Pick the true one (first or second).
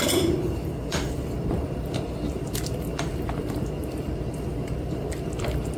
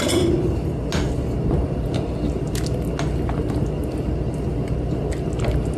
second